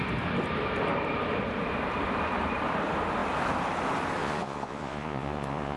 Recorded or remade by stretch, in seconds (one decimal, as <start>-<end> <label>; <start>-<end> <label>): 0.0-4.2 recorded; 4.2-5.8 remade